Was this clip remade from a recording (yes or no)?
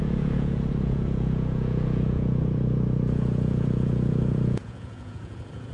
yes